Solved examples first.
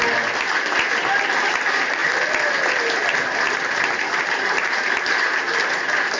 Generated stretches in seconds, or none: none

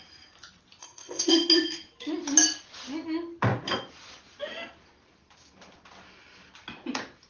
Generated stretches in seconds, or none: 0.8-1.3 (codec, ZipCodec)

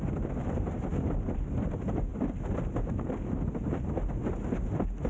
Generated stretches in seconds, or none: 0.9-1.7 (vocoder, BigVGAN v2)

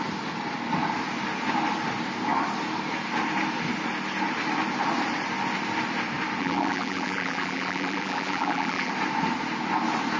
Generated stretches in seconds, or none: 6.4-8.9 (vocoder, BigVGAN v2)

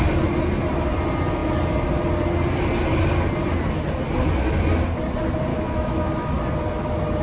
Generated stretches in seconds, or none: 5.5-6.4 (autoencoder, DAC-VAE)